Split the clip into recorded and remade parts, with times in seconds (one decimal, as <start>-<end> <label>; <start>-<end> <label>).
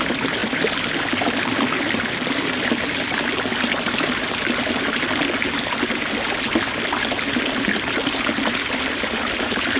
0.0-9.8 recorded